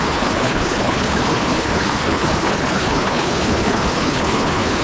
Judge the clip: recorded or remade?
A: remade